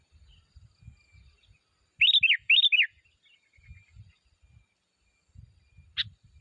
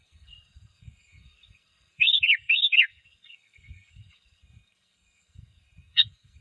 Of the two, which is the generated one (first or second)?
second